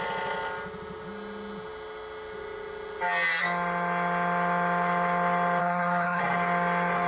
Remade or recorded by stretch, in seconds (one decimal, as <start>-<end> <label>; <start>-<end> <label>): 0.0-5.6 recorded; 5.6-6.2 remade; 6.2-7.1 recorded